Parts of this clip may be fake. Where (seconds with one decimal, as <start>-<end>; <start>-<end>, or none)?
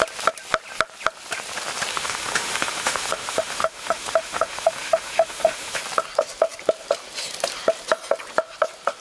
1.9-5.8